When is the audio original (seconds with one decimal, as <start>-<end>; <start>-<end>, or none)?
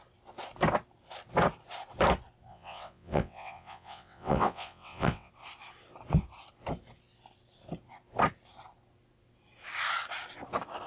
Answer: 0.0-2.5; 5.3-10.9